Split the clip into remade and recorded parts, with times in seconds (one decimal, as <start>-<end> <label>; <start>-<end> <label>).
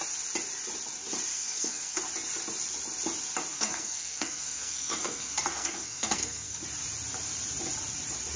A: 0.0-1.3 recorded; 1.3-2.0 remade; 2.0-3.5 recorded; 3.5-6.6 remade; 6.6-8.4 recorded